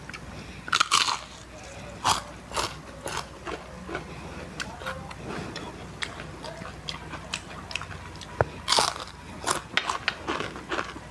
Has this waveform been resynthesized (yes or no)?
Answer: no